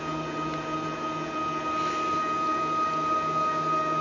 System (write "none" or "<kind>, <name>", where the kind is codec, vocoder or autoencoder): none